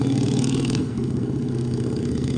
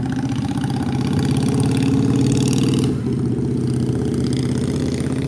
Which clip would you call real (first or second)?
second